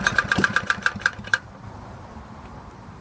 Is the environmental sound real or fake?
fake